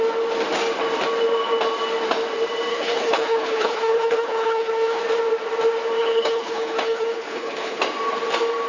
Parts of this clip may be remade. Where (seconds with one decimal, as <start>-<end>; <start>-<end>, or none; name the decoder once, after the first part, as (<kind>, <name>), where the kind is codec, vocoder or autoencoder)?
2.7-5.0 (codec, HILCodec); 6.0-7.8